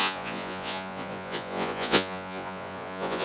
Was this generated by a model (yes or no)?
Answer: yes